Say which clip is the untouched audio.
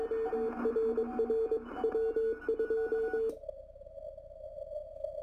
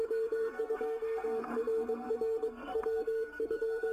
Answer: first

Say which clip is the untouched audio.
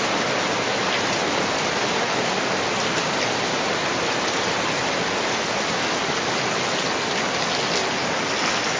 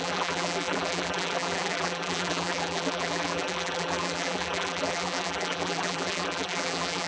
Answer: first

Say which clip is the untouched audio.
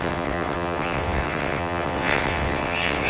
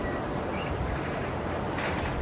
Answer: second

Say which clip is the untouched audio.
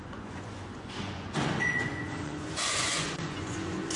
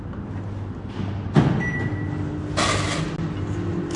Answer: second